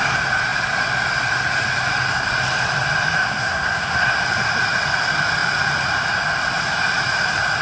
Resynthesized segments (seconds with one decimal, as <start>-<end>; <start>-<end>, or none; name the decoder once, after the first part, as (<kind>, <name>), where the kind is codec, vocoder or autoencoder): 3.2-4.1 (codec, SNAC)